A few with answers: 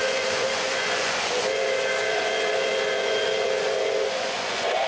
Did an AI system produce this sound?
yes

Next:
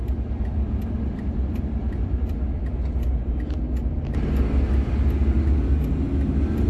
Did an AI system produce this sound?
no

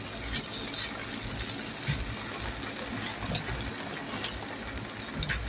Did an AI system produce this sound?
no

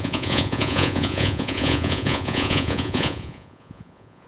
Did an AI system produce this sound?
yes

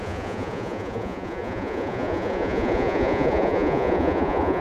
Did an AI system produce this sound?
yes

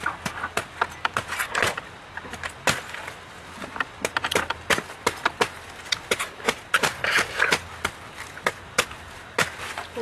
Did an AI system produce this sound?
no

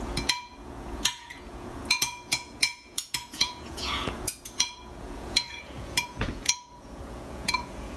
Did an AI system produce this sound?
yes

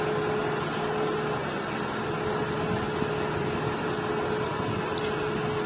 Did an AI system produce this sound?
no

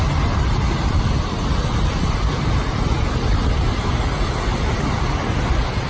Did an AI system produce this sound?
no